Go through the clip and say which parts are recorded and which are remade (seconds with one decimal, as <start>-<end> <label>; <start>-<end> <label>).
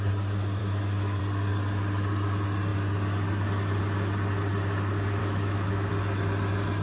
0.0-0.6 recorded; 0.6-1.2 remade; 1.2-5.2 recorded; 5.2-5.9 remade; 5.9-6.8 recorded